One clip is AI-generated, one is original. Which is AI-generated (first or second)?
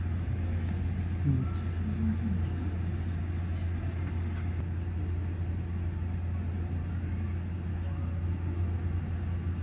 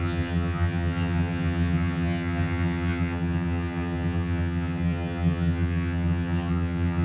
second